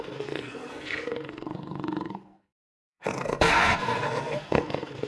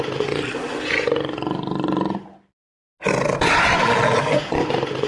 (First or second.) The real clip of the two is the second